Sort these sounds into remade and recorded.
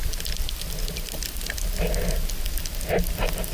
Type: recorded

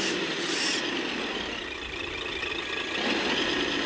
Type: recorded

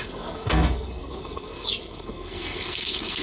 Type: remade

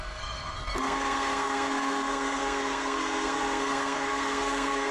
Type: remade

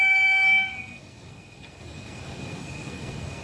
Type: remade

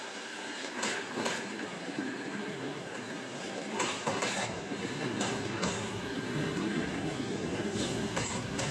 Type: remade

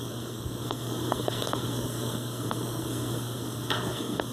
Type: remade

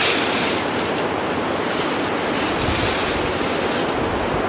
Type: recorded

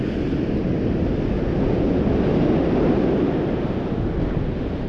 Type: recorded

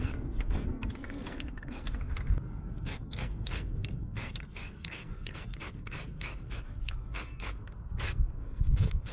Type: remade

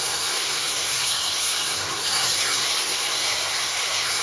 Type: remade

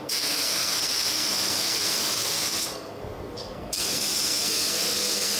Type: remade